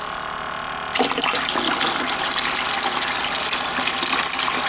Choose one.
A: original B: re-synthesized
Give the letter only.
A